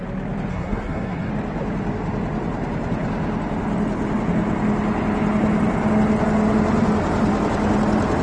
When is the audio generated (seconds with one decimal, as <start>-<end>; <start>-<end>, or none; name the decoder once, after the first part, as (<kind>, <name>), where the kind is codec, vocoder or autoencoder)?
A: 0.5-1.3 (codec, SNAC)